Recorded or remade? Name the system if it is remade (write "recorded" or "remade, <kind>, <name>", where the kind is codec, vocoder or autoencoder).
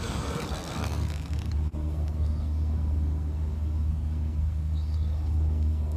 remade, codec, SNAC